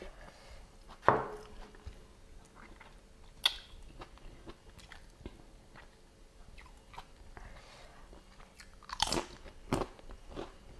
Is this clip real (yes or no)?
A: yes